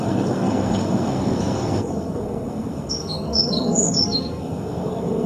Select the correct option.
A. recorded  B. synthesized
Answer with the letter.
B